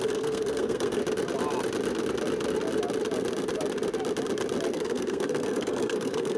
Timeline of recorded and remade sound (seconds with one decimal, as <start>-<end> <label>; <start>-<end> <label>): 0.0-1.0 remade; 1.0-4.7 recorded; 4.7-6.4 remade